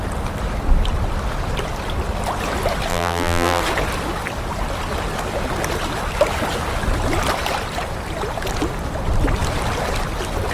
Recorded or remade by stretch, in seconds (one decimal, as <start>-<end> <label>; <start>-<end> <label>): 0.0-2.9 recorded; 2.9-3.6 remade; 3.6-10.5 recorded